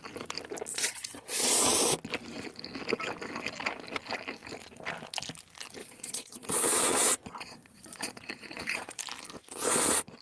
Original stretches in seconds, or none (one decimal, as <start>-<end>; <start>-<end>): 0.0-0.7; 1.6-5.8; 9.0-10.2